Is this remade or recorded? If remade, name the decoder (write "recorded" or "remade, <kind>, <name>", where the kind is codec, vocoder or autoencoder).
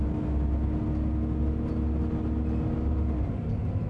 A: recorded